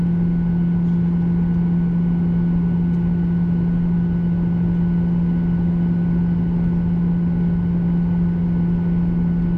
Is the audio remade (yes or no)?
no